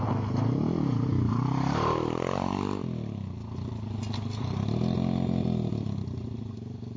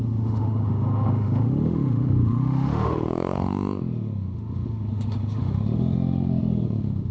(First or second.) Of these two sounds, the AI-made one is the second